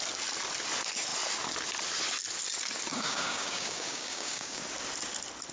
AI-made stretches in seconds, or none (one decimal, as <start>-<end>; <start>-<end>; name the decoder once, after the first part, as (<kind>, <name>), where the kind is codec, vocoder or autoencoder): 2.9-4.6 (codec, DAC)